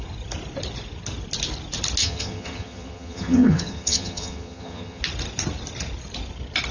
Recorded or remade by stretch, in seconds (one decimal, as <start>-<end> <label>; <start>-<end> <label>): 0.0-2.0 recorded; 2.0-5.0 remade; 5.0-6.7 recorded